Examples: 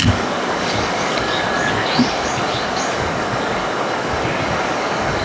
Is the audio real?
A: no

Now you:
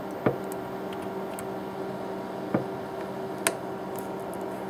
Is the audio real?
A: yes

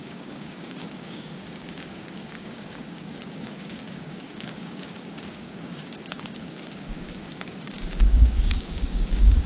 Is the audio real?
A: no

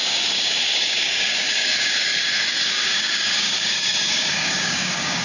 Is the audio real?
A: no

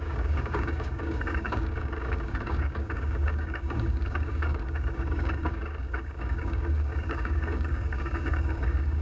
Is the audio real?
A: no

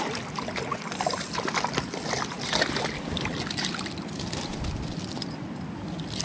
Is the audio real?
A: yes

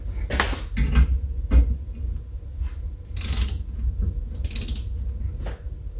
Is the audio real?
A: yes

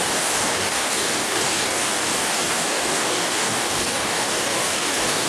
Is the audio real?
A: no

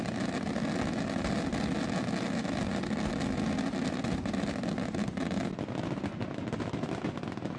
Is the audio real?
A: yes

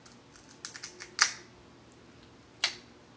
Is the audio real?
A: yes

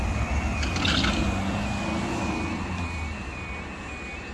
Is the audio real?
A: yes